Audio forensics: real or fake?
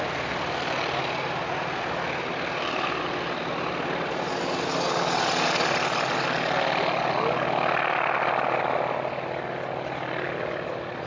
real